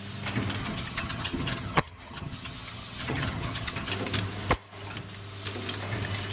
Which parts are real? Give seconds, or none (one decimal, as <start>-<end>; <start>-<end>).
0.0-0.6; 3.9-6.3